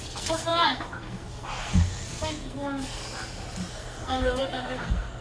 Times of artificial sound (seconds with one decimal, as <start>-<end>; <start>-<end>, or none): 0.0-3.0; 3.7-5.2